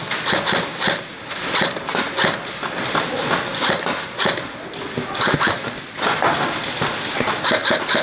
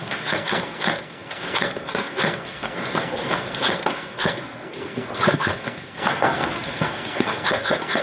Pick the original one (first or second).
first